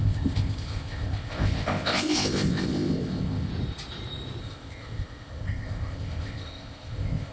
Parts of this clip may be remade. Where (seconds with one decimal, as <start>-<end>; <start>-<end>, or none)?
0.0-3.5; 4.4-7.3